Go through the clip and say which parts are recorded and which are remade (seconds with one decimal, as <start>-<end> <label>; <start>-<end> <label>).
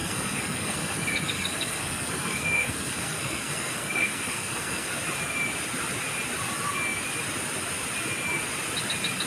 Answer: 0.0-4.9 remade; 4.9-9.3 recorded